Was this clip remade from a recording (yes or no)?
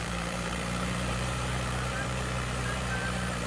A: yes